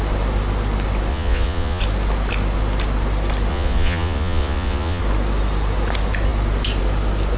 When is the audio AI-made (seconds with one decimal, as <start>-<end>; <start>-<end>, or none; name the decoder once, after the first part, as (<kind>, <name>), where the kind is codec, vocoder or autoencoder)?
1.1-1.8 (vocoder, Vocos); 3.5-5.0